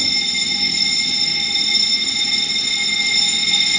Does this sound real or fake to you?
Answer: real